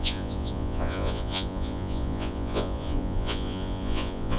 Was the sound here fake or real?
fake